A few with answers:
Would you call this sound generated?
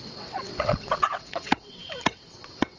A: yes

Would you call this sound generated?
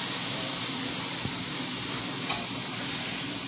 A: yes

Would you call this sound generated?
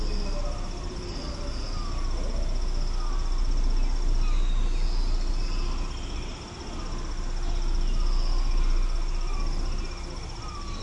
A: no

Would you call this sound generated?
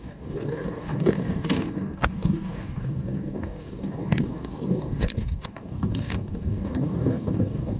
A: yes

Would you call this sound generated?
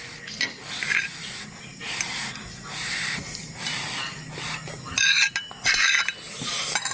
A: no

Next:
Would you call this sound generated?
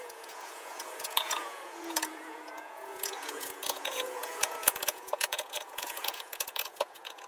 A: yes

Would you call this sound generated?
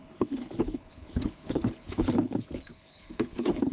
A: yes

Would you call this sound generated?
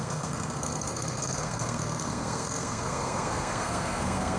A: yes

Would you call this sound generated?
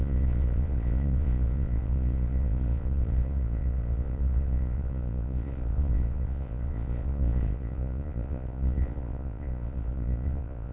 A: yes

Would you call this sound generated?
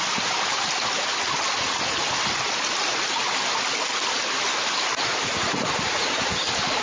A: no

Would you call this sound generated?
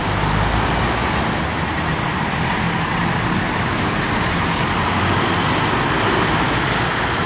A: no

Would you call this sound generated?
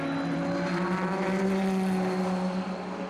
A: no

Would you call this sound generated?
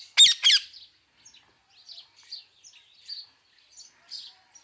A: no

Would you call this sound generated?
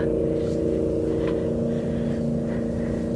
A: no